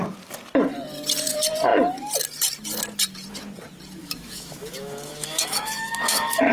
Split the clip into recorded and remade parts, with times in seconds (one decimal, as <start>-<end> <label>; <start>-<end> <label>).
0.0-4.0 recorded; 4.0-6.5 remade

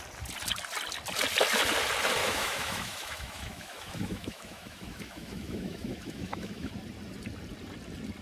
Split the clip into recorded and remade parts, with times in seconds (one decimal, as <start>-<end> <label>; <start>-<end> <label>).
0.0-2.2 recorded; 2.2-6.7 remade; 6.7-8.2 recorded